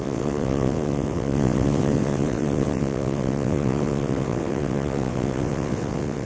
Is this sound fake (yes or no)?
yes